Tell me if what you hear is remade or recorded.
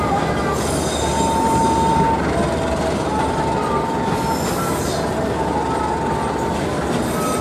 recorded